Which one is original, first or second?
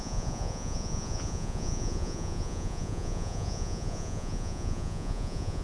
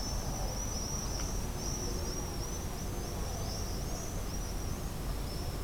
second